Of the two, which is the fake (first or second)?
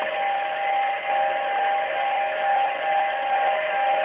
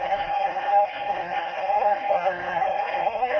second